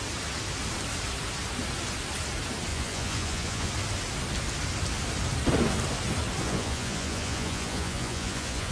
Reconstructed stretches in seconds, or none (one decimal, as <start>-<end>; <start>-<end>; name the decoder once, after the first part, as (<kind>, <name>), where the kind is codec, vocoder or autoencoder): 2.7-3.7 (vocoder, Vocos); 6.4-8.7